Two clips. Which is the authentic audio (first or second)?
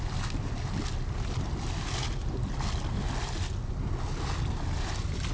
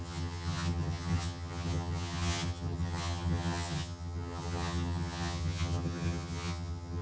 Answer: first